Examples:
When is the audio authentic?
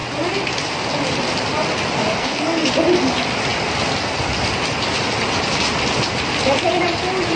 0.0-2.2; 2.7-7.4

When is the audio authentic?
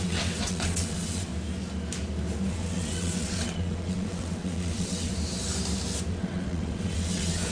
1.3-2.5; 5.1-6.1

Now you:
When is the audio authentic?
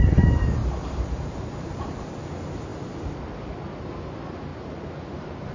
0.0-0.6; 2.0-4.5